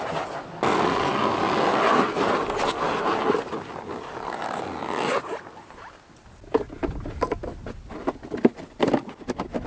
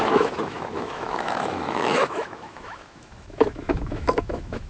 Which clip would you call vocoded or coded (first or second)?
second